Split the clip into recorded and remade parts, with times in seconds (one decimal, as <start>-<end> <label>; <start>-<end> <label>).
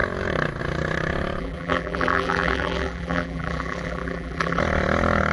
0.0-1.4 recorded; 1.4-4.6 remade; 4.6-5.3 recorded